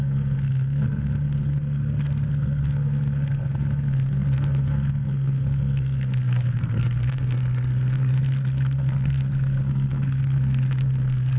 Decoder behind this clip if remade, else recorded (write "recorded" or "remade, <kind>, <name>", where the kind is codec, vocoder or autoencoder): remade, codec, SNAC